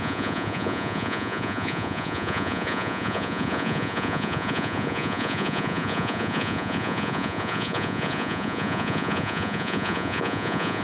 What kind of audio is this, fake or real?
fake